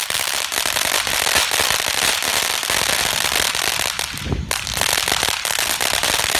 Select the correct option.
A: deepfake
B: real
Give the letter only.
B